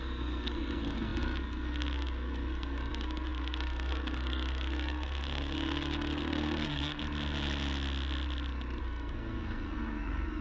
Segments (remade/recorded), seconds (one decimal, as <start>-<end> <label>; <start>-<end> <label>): 0.0-7.0 remade; 7.0-8.8 recorded; 8.8-10.4 remade